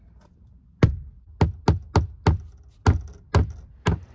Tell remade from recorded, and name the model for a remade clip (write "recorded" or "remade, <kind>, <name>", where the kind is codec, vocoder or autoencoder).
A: recorded